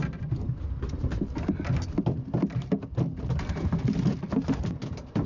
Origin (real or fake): real